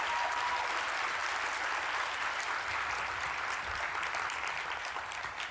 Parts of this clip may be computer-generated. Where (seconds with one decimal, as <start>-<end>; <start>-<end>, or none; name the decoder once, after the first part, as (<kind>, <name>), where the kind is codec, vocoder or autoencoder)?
0.0-1.2 (vocoder, BigVGAN v2); 3.6-5.5